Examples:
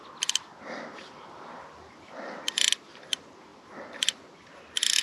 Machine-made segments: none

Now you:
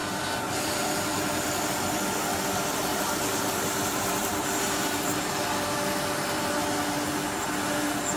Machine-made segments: 2.9-5.3 (vocoder, BigVGAN v2)

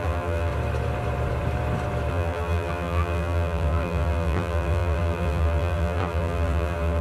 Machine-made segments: 0.0-0.5 (vocoder, BigVGAN v2); 2.1-7.0

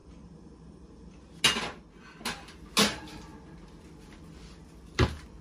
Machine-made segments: 0.0-1.4 (vocoder, BigVGAN v2)

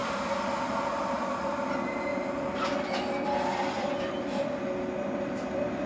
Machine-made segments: 0.0-1.7 (vocoder, BigVGAN v2); 2.1-4.4

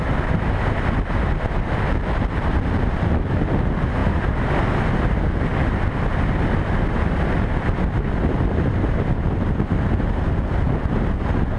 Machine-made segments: 4.0-4.5 (vocoder, BigVGAN v2)

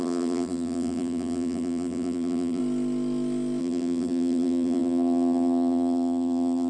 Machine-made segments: 0.0-2.6 (vocoder, BigVGAN v2); 3.6-6.7